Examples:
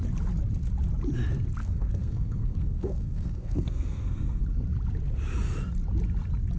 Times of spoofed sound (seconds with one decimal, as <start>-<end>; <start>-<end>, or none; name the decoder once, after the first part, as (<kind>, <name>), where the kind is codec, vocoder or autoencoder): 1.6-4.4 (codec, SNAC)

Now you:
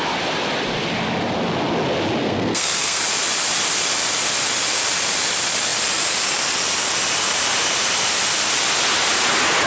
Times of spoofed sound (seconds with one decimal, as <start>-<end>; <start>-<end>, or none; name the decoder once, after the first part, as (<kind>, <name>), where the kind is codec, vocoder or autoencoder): 2.2-3.0 (codec, SNAC)

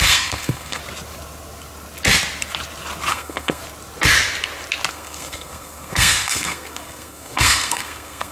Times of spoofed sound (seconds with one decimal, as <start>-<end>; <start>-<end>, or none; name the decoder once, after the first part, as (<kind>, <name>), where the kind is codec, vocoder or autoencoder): 0.0-0.8 (codec, SNAC); 3.1-3.6; 4.9-8.3

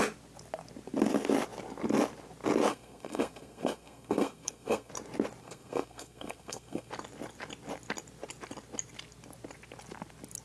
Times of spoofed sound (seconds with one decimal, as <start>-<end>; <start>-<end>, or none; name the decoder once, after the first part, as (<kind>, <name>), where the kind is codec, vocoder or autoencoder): 2.7-4.9 (codec, SNAC); 5.4-6.9

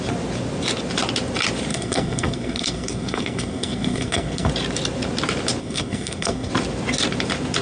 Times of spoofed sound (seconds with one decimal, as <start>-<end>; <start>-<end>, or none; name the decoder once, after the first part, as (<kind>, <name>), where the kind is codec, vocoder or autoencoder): 1.7-4.5 (codec, SNAC); 5.6-6.5